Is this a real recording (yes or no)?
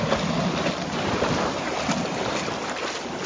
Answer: yes